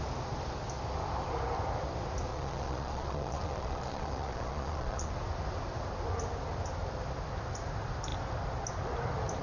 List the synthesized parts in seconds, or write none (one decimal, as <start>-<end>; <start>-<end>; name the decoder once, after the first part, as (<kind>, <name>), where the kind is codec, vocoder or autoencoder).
2.3-5.1 (vocoder, Vocos)